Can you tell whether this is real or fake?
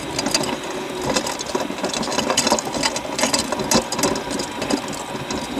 real